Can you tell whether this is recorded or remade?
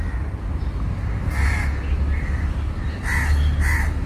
recorded